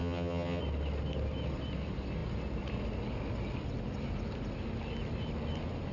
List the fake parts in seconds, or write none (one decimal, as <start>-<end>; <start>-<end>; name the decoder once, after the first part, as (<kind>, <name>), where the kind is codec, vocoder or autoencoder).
0.0-0.6 (vocoder, HiFi-GAN)